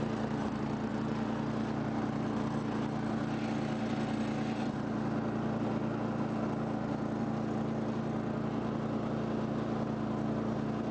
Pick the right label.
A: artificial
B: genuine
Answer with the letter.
B